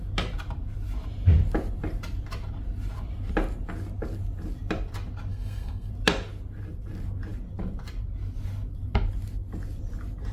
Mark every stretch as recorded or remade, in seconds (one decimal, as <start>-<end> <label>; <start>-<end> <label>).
0.0-5.3 recorded; 5.3-5.9 remade; 5.9-10.3 recorded